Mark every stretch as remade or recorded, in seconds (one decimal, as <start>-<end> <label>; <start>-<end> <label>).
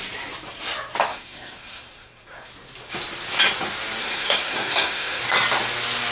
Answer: 0.0-1.1 recorded; 1.1-2.5 remade; 2.5-4.0 recorded; 4.0-5.2 remade; 5.2-6.1 recorded